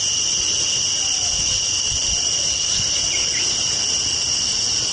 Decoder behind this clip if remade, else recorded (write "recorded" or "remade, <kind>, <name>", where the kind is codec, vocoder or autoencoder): recorded